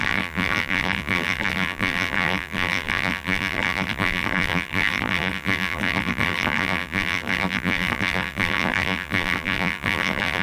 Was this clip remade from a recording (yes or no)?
yes